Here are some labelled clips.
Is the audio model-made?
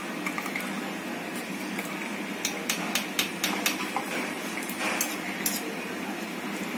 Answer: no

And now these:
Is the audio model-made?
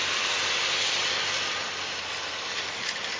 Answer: no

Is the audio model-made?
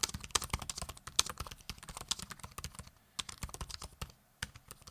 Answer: no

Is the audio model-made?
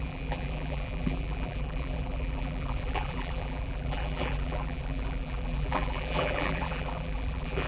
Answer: yes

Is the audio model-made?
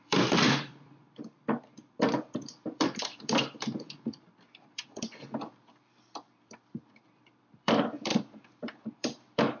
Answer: yes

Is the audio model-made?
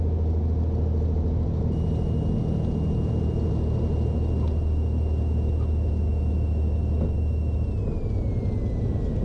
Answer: no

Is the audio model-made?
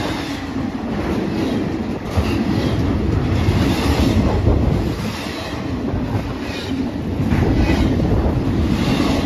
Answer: no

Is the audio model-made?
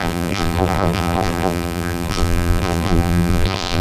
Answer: yes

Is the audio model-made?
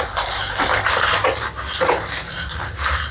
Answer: yes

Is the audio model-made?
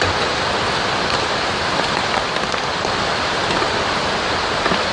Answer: yes